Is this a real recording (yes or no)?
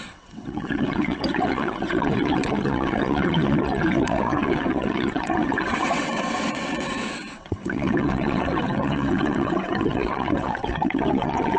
no